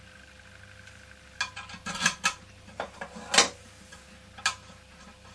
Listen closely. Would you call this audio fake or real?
real